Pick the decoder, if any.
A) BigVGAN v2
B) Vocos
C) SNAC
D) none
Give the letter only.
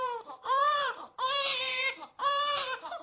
A